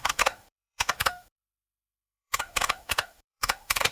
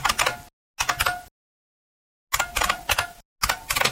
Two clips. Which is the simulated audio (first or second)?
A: first